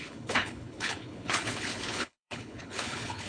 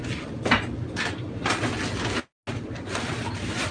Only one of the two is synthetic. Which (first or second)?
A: first